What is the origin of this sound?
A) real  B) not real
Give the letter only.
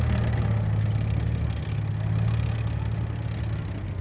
A